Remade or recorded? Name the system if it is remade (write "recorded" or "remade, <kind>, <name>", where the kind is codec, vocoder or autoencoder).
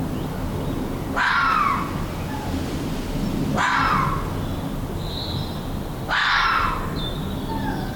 recorded